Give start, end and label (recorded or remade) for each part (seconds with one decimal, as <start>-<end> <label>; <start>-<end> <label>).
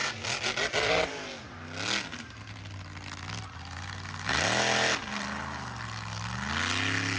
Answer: 0.0-7.2 recorded